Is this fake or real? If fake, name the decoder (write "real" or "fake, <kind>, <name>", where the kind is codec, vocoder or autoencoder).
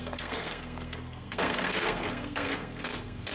fake, codec, SNAC